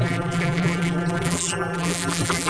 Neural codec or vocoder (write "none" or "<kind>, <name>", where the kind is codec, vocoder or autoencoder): vocoder, BigVGAN v2